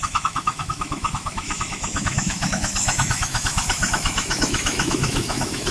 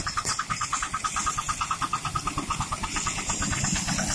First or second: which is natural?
second